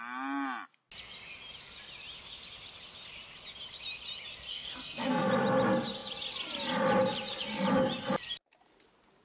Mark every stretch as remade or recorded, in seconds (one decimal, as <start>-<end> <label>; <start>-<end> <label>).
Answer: 0.0-4.5 recorded; 4.5-5.3 remade; 5.3-9.2 recorded